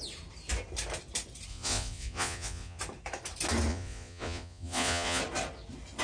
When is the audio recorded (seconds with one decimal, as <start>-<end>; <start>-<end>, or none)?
0.0-1.5; 2.8-3.7; 5.2-6.0